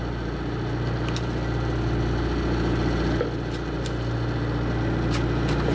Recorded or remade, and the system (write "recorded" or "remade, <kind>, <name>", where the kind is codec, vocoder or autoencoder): recorded